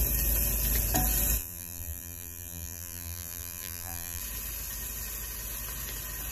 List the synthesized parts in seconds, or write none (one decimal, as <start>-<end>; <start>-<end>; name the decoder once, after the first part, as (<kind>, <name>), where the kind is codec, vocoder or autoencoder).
1.4-4.2 (vocoder, BigVGAN v2)